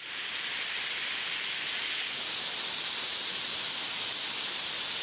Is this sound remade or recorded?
recorded